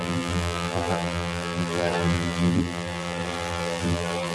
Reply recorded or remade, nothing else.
remade